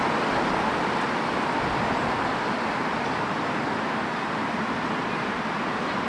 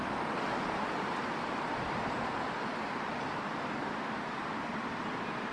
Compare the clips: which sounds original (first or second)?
first